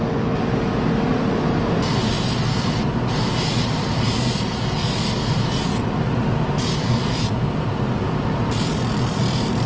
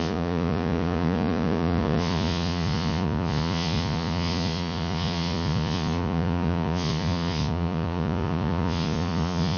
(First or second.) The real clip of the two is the first